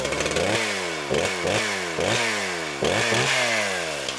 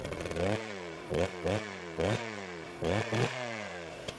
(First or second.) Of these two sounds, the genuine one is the first